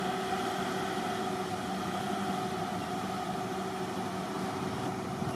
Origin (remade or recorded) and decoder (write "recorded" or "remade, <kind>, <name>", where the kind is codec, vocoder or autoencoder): recorded